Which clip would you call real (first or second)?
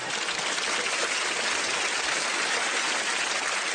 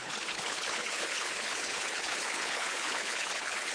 first